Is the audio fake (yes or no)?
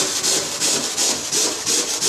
no